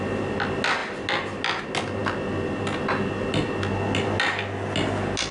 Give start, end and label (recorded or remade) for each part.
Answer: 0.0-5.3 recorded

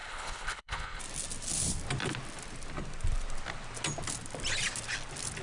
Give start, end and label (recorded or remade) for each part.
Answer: 0.0-1.0 remade; 1.0-5.4 recorded

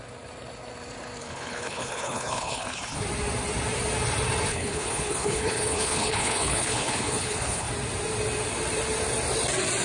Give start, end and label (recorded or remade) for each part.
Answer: 0.0-1.2 recorded; 1.2-3.0 remade; 3.0-4.5 recorded; 4.5-7.7 remade; 7.7-9.8 recorded

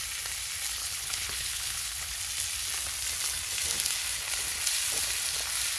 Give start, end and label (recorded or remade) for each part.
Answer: 0.0-0.8 recorded; 0.8-2.2 remade; 2.2-5.8 recorded

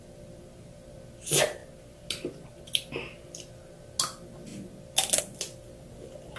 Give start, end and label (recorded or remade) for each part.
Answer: 0.0-6.4 recorded